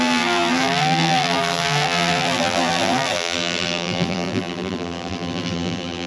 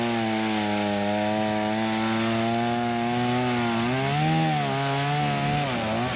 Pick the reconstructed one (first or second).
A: first